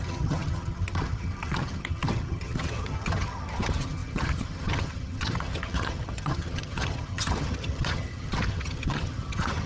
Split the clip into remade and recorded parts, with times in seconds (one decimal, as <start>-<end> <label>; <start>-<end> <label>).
0.0-9.7 remade